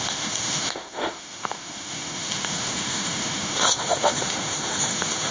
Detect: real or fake fake